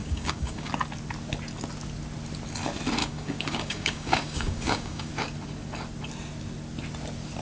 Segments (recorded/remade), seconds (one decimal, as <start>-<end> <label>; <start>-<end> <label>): 0.0-0.7 remade; 0.7-3.0 recorded; 3.0-5.1 remade; 5.1-7.4 recorded